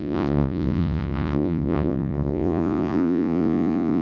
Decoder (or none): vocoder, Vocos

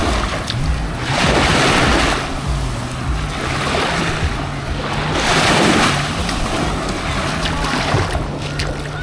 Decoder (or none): none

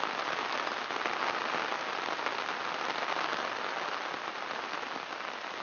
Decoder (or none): none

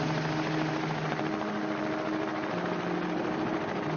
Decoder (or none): none